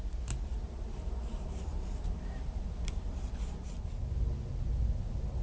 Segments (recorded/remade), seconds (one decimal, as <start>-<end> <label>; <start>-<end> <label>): 0.0-0.5 recorded; 0.5-3.7 remade; 3.7-5.4 recorded